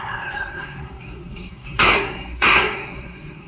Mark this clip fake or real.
fake